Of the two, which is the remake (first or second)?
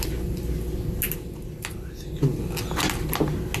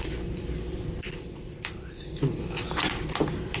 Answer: second